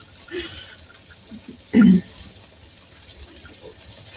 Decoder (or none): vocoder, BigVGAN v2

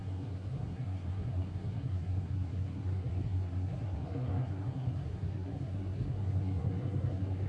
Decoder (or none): codec, SNAC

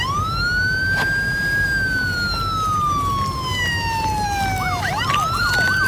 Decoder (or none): none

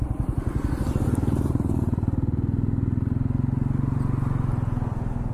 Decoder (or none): none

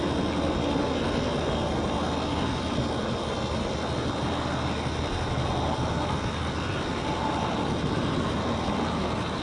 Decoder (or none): none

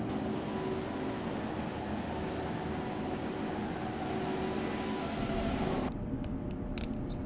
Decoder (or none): none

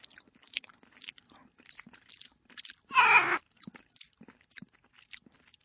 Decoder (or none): none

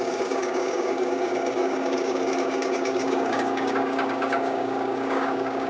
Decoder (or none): codec, DAC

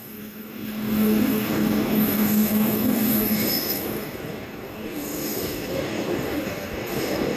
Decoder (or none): codec, DAC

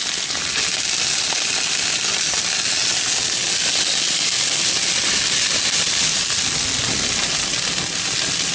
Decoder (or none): none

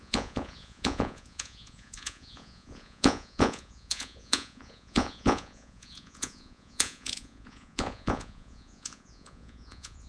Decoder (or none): vocoder, Vocos